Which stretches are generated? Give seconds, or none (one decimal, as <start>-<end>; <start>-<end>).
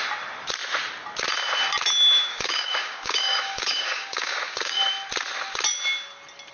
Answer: 2.3-4.8